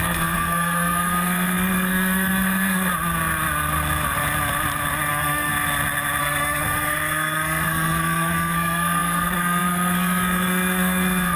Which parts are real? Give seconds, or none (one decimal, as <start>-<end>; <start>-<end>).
2.9-5.1; 5.5-6.2